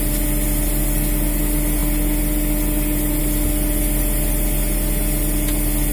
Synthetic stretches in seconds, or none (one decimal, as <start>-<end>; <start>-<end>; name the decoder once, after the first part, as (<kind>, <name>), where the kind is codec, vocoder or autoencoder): none

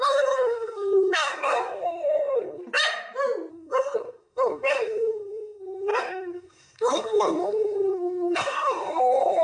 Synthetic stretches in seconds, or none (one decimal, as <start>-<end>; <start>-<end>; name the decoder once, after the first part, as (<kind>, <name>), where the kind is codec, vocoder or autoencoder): 0.0-2.6 (codec, SNAC); 3.5-9.4

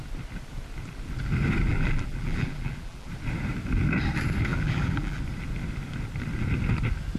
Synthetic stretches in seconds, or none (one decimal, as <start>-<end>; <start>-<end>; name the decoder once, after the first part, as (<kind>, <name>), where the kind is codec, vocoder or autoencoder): 1.7-3.1 (vocoder, BigVGAN v2); 4.5-5.2

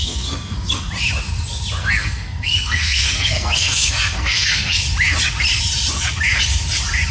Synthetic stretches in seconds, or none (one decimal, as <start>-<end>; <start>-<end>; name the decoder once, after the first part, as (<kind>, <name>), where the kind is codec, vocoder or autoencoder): 0.0-0.9 (codec, SNAC); 1.8-4.8

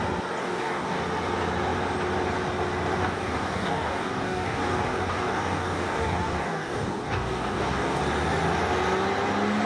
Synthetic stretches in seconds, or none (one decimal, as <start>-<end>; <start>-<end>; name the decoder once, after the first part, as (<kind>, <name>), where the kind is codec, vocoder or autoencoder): 0.4-1.0 (codec, DAC); 3.0-8.0

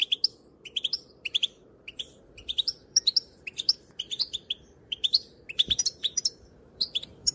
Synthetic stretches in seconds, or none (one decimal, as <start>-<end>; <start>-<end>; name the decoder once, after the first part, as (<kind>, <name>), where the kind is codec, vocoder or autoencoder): 0.8-7.3 (vocoder, BigVGAN v2)

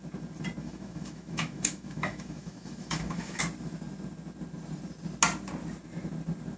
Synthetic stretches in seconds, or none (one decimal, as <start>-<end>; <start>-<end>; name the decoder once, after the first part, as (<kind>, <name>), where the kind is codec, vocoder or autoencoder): 0.6-3.4 (autoencoder, DAC-VAE)